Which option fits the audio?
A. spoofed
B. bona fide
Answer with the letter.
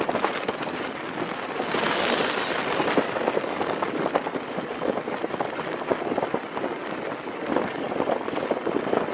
B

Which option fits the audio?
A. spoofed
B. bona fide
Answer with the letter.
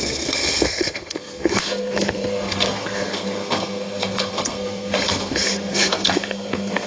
A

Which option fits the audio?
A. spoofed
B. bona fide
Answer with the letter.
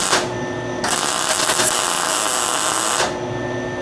B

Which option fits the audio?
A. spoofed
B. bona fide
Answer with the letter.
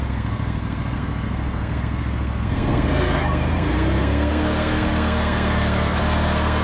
A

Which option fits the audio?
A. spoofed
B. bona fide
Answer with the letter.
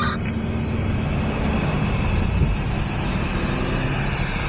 B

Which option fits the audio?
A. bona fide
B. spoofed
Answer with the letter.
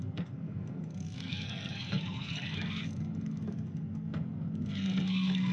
B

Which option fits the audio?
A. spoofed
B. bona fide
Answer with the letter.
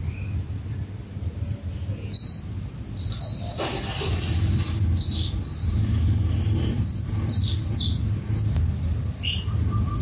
B